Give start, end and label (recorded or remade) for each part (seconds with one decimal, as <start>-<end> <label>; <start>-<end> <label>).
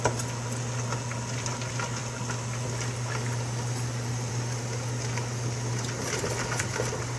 0.0-7.2 recorded